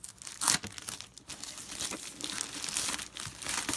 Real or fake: real